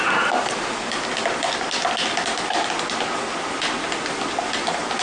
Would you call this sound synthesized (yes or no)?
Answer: no